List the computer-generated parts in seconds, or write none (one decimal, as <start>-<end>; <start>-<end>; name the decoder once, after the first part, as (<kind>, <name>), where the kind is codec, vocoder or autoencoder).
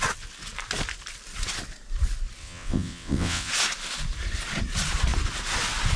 2.4-3.5 (vocoder, WaveNeXt)